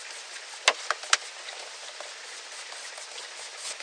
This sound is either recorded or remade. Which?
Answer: recorded